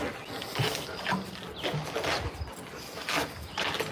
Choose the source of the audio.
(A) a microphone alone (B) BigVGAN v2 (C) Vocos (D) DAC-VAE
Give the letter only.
A